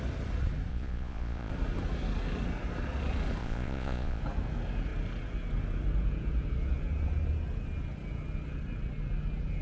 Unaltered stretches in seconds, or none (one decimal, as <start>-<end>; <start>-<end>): 0.0-0.7; 1.5-3.4; 4.2-9.6